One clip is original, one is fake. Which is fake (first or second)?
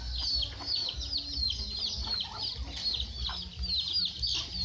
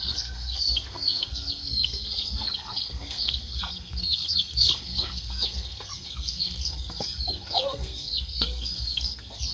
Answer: second